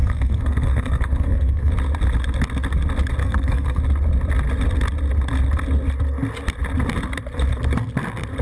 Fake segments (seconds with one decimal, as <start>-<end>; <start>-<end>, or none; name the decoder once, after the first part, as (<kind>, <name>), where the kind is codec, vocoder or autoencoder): 0.0-1.7 (codec, SNAC); 3.2-3.8